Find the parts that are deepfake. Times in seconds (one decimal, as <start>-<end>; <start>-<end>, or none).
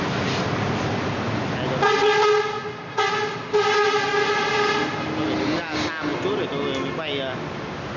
none